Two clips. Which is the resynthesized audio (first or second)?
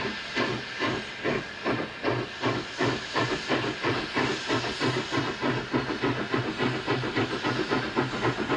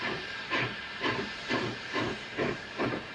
second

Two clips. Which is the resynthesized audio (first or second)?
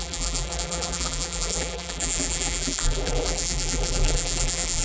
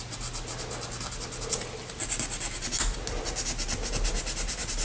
first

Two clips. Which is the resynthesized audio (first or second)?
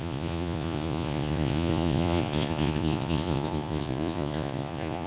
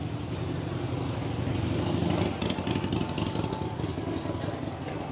first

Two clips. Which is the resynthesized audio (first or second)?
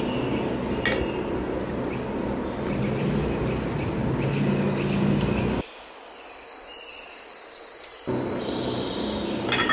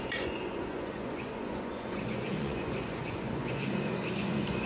second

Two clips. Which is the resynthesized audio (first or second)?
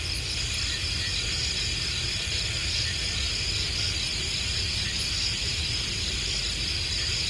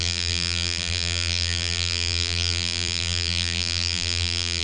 second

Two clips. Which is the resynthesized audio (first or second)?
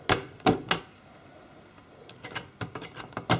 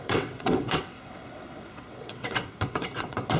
second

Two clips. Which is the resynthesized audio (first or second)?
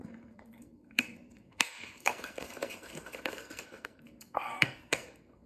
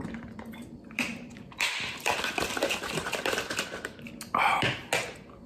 first